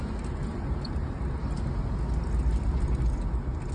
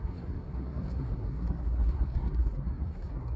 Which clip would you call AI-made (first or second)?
second